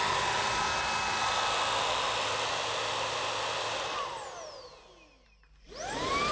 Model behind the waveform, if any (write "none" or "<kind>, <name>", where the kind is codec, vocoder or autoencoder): none